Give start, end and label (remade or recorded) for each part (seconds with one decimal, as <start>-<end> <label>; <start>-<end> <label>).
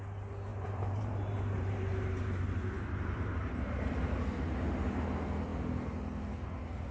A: 0.0-0.5 recorded; 0.5-3.9 remade; 3.9-6.9 recorded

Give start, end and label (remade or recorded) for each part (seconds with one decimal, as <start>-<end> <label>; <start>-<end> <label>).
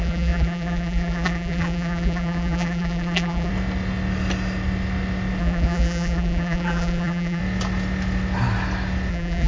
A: 0.0-3.5 remade; 3.5-5.4 recorded; 5.4-7.4 remade; 7.4-9.1 recorded; 9.1-9.5 remade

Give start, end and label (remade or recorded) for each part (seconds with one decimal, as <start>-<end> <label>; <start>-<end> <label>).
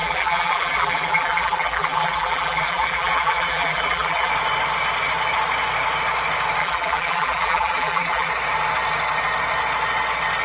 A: 0.0-4.3 remade; 4.3-6.6 recorded; 6.6-8.3 remade; 8.3-10.4 recorded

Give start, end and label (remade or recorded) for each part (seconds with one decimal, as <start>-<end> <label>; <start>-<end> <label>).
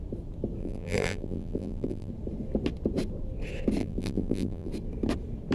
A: 0.0-0.6 recorded; 0.6-2.1 remade; 2.1-3.8 recorded; 3.8-4.7 remade; 4.7-5.5 recorded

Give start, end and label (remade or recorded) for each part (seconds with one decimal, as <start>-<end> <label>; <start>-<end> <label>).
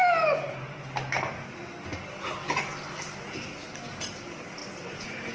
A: 0.0-3.2 recorded; 3.2-5.3 remade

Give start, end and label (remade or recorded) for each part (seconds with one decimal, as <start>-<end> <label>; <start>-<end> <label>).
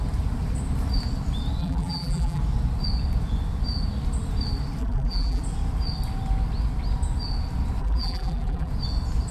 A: 0.0-1.6 recorded; 1.6-2.4 remade; 2.4-4.8 recorded; 4.8-5.4 remade; 5.4-7.8 recorded; 7.8-8.7 remade; 8.7-9.3 recorded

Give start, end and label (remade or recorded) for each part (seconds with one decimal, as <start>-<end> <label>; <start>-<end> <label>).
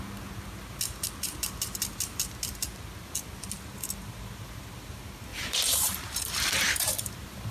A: 0.0-5.3 recorded; 5.3-7.5 remade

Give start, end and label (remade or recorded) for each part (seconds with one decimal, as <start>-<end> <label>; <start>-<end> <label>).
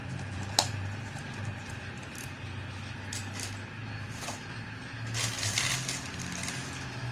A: 0.0-2.2 remade; 2.2-3.8 recorded; 3.8-4.8 remade; 4.8-7.1 recorded